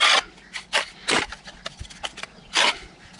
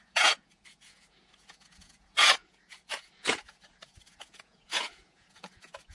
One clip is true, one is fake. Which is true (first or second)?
first